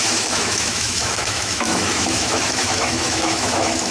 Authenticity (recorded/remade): remade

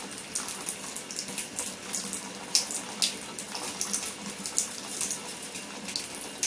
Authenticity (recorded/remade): recorded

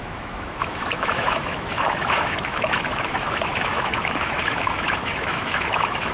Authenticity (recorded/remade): remade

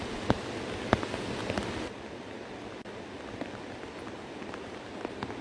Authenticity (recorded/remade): recorded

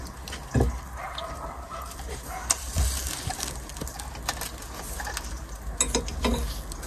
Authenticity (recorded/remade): recorded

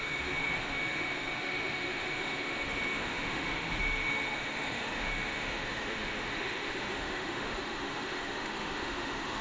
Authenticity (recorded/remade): remade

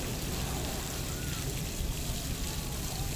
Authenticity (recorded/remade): recorded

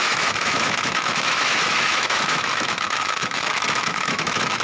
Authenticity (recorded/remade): remade